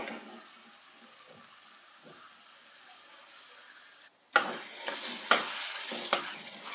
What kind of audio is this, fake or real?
real